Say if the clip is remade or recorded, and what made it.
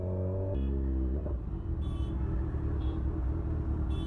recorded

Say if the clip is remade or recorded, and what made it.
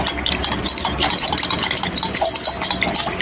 recorded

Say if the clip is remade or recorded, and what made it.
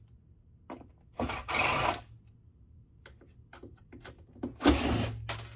recorded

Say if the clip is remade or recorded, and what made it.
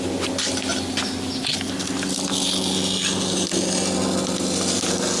recorded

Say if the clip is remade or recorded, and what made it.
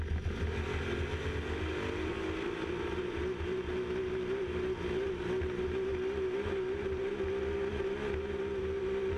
recorded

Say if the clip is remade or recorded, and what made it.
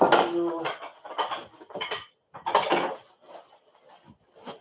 recorded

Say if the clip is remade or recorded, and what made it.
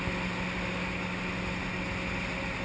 recorded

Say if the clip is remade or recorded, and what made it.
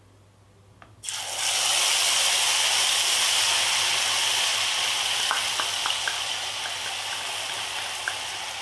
recorded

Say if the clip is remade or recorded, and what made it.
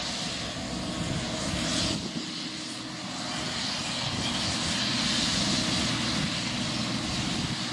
recorded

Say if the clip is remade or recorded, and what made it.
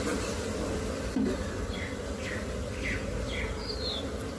recorded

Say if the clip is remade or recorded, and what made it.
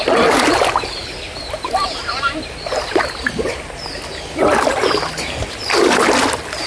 recorded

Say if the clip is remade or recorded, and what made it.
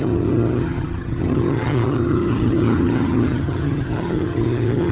remade, vocoder, HiFi-GAN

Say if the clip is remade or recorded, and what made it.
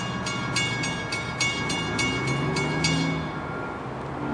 recorded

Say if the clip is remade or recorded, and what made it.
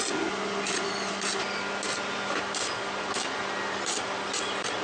recorded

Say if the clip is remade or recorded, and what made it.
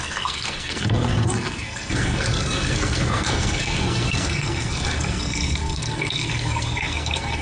remade, codec, SNAC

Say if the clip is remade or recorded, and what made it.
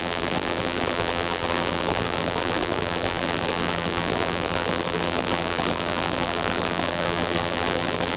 remade, vocoder, BigVGAN v2